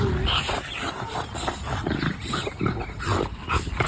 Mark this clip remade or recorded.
recorded